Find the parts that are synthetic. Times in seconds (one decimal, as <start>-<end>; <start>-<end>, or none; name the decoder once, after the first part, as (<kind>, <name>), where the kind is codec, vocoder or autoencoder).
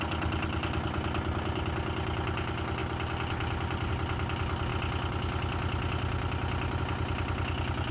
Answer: none